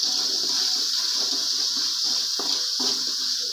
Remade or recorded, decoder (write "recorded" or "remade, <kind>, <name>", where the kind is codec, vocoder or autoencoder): recorded